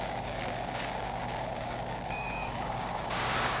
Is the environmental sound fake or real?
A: fake